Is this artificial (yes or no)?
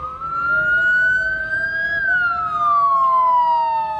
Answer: no